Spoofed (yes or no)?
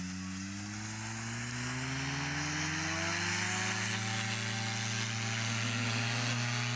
no